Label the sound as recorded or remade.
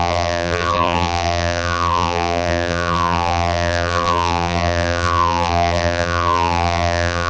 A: remade